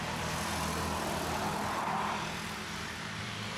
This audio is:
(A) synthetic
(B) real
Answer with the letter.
A